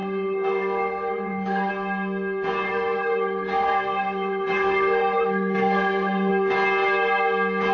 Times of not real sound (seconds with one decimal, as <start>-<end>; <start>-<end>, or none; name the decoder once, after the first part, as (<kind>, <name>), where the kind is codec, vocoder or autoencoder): 0.0-1.7 (codec, SNAC); 2.7-6.3